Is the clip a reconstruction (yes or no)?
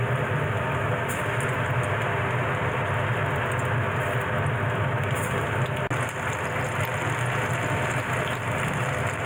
no